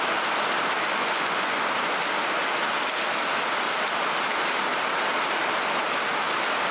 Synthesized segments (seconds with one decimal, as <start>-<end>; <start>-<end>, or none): 0.9-1.6